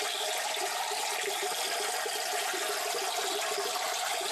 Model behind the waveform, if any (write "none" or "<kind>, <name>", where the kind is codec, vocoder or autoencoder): none